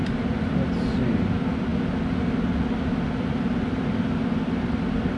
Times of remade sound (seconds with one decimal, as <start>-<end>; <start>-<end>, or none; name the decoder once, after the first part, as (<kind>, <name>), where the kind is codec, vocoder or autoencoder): none

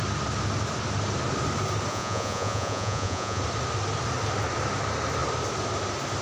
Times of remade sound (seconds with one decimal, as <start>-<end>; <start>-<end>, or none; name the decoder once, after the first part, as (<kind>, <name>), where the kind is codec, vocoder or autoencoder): 1.9-3.4 (vocoder, Vocos)

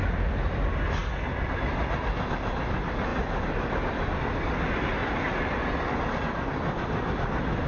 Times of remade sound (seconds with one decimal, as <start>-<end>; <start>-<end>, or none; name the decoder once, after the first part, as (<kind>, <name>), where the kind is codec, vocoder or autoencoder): none

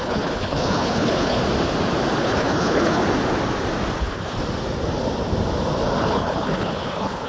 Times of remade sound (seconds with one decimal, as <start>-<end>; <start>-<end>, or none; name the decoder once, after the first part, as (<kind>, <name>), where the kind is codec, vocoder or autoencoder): 0.0-1.4 (codec, HILCodec); 2.2-3.0; 4.0-4.4; 6.0-7.3

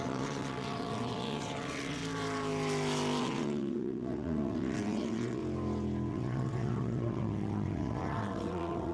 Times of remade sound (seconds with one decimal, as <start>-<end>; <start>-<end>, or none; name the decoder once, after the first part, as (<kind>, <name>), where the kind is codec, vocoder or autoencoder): 0.0-2.0 (vocoder, WaveNeXt); 3.2-5.4; 6.1-8.9

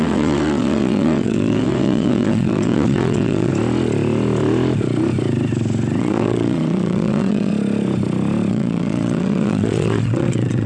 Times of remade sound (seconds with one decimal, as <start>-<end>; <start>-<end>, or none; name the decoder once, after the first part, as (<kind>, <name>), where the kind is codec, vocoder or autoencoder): 0.0-3.5 (vocoder, WaveNeXt); 6.0-7.5; 8.5-10.7